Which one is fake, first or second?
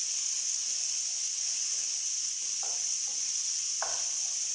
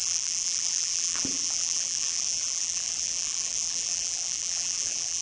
second